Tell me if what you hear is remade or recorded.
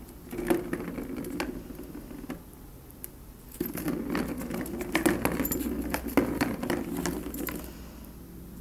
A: recorded